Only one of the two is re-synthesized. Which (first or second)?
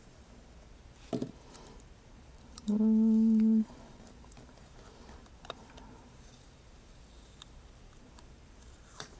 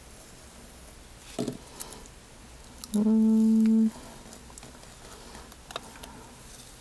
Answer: first